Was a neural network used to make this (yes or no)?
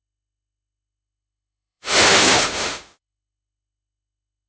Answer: yes